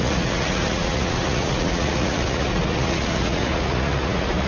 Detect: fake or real fake